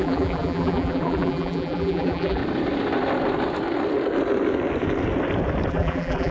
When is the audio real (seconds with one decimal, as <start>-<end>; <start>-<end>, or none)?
2.4-5.7